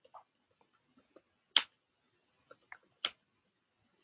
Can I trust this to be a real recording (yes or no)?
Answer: yes